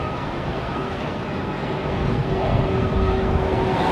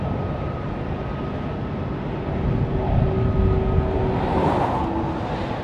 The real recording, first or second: second